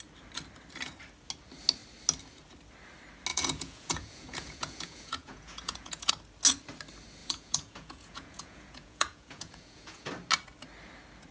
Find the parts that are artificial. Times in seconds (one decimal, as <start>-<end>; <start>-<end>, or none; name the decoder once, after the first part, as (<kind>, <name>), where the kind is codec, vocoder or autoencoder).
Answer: 3.3-6.1 (vocoder, Vocos); 7.2-10.1